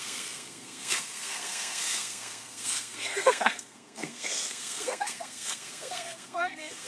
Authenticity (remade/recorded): remade